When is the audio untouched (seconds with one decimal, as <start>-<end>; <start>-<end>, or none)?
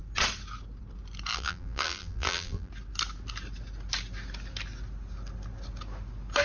0.0-1.3; 2.7-6.4